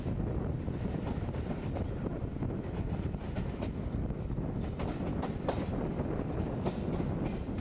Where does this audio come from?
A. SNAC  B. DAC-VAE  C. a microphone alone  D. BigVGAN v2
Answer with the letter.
C